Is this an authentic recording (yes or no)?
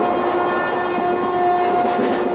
yes